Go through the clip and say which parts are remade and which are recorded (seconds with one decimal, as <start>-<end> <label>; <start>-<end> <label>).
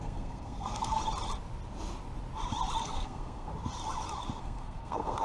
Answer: 0.0-1.0 remade; 1.0-2.8 recorded; 2.8-3.5 remade; 3.5-4.4 recorded; 4.4-5.2 remade